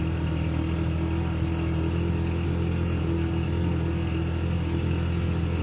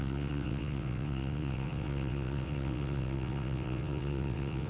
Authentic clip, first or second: first